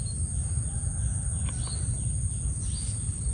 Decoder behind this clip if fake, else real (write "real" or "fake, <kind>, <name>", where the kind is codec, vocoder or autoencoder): real